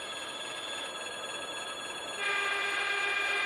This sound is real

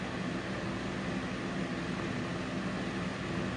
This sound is real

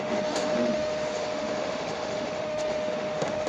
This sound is fake